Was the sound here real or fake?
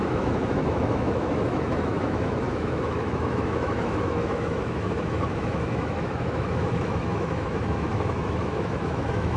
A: fake